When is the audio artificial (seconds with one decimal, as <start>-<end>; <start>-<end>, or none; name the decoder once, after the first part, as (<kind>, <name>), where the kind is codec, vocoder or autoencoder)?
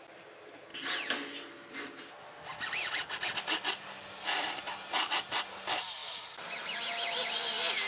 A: none